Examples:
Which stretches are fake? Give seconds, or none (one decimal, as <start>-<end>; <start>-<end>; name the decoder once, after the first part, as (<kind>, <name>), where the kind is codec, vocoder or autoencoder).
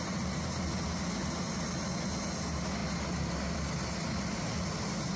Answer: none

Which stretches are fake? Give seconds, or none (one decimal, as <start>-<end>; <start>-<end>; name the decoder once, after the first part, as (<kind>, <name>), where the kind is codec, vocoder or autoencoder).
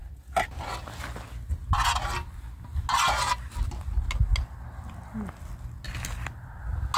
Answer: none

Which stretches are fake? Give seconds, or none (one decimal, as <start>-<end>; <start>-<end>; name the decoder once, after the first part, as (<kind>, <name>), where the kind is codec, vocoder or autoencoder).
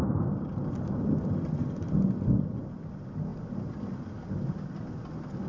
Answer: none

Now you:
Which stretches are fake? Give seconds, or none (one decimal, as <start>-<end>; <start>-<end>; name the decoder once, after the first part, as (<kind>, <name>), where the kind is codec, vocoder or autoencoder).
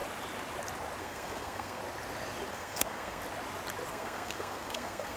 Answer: 1.0-1.8 (codec, SNAC); 2.5-3.2; 3.9-5.2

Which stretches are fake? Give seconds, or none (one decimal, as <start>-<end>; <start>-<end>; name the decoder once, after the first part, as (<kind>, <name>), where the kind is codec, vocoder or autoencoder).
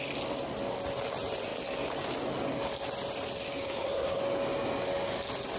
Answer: 3.6-4.2 (codec, SNAC)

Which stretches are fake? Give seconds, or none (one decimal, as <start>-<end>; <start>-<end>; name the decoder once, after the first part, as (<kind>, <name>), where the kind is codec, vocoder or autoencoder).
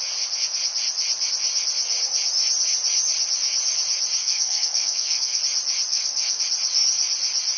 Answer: 4.2-5.4 (codec, SNAC); 5.9-6.4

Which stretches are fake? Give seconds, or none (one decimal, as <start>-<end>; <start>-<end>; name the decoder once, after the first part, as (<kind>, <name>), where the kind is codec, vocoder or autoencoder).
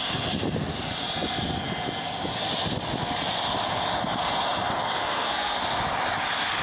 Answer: 4.8-5.6 (codec, SNAC)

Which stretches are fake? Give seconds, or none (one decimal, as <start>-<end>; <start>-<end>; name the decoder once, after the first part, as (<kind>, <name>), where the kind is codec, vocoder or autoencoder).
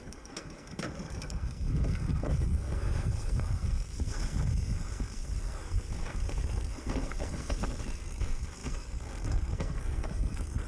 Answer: 0.0-10.7 (codec, SNAC)